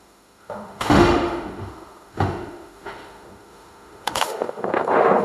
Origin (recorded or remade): remade